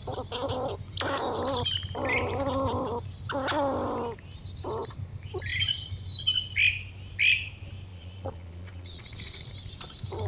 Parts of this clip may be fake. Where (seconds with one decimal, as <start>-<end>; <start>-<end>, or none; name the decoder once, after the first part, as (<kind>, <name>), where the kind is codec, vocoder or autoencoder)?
7.9-9.5 (vocoder, Vocos)